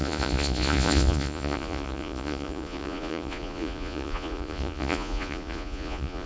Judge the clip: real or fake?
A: fake